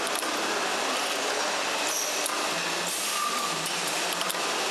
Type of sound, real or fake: fake